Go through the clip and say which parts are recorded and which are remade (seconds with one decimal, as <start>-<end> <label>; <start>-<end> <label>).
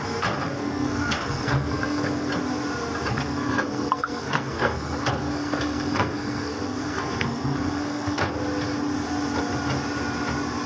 0.0-0.6 recorded; 0.6-2.3 remade; 2.3-3.1 recorded; 3.1-8.3 remade; 8.3-10.7 recorded